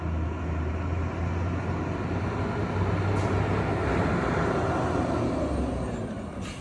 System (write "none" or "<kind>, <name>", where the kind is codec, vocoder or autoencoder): none